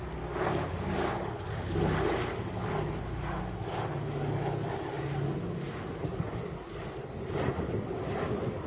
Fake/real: real